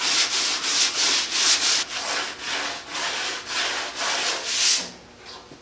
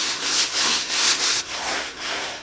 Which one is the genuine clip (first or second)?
first